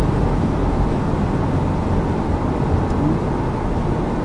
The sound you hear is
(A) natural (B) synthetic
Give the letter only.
A